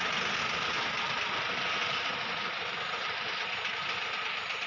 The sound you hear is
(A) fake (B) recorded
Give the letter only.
B